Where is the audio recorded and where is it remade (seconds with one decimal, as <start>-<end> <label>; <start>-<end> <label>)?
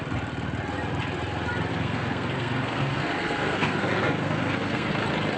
0.0-1.7 recorded; 1.7-4.9 remade; 4.9-5.4 recorded